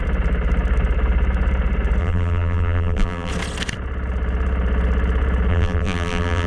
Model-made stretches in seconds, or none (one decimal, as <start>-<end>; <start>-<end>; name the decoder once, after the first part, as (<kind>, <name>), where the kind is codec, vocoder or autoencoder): 2.0-3.3 (vocoder, BigVGAN v2); 5.5-6.5